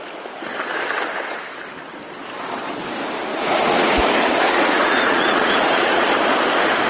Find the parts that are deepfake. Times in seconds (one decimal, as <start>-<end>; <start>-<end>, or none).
3.3-6.1